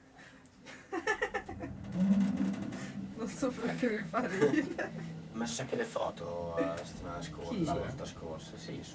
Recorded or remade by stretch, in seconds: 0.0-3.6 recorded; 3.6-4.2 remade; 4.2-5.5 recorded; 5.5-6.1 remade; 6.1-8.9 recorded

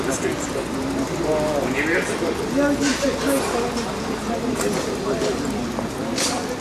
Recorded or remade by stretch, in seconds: 0.0-6.6 recorded

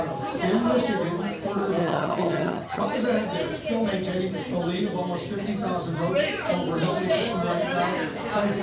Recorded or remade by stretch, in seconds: 0.0-1.8 recorded; 1.8-2.8 remade; 2.8-8.6 recorded